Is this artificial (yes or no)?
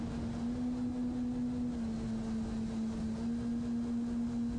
no